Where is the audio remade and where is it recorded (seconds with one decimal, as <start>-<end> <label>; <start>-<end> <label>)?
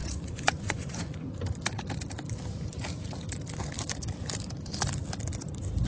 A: 0.0-1.1 remade; 1.1-5.9 recorded